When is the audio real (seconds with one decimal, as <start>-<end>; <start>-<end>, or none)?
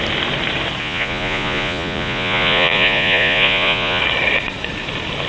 0.0-0.8; 4.0-5.3